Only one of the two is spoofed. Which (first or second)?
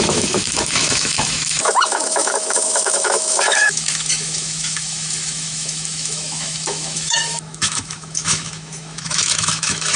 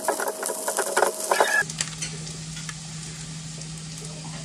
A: first